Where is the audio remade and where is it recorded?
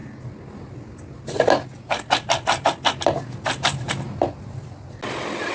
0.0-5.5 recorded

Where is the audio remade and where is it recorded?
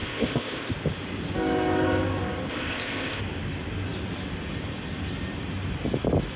0.0-0.7 remade; 0.7-2.5 recorded; 2.5-3.2 remade; 3.2-6.4 recorded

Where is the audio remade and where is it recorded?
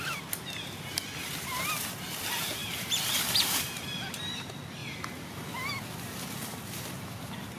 0.0-7.6 recorded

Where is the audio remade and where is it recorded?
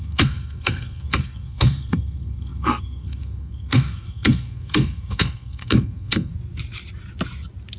0.0-6.3 remade; 6.3-7.8 recorded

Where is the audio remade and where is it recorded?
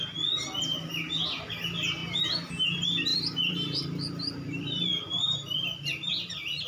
0.0-3.1 recorded; 3.1-6.1 remade; 6.1-6.7 recorded